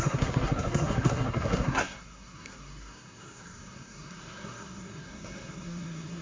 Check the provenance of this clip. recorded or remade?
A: remade